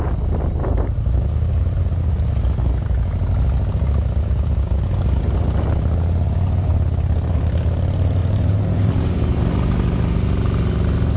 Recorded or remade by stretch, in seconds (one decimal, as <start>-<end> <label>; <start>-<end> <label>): 0.0-6.7 recorded; 6.7-7.3 remade; 7.3-8.2 recorded; 8.2-9.4 remade; 9.4-11.2 recorded